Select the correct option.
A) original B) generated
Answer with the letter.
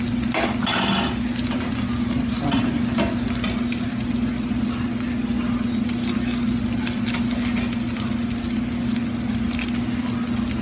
A